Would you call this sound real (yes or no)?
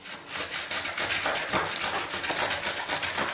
yes